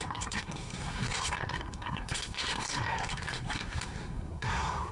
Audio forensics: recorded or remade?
remade